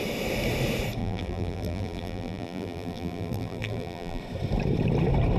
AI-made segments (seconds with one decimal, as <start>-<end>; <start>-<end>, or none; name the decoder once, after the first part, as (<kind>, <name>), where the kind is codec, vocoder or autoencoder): 1.0-4.2 (vocoder, BigVGAN v2)